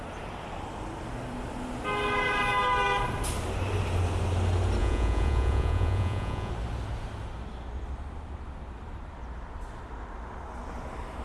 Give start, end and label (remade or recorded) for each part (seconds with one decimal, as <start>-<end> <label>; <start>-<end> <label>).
0.0-4.8 recorded; 4.8-6.5 remade; 6.5-11.2 recorded